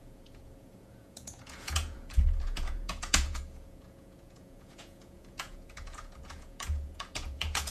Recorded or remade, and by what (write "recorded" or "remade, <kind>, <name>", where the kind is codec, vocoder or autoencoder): remade, vocoder, Vocos